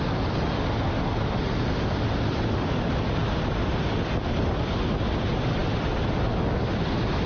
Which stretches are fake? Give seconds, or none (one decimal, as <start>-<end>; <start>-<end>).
none